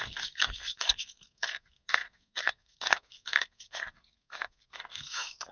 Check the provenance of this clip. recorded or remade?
remade